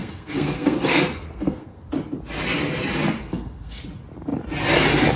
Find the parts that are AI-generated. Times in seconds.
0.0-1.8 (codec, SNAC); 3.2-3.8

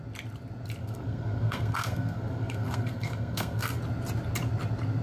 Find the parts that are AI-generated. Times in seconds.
0.8-3.8 (codec, SNAC)

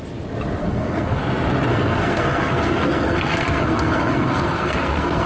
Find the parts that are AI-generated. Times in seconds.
0.6-1.2 (codec, SNAC); 1.7-5.3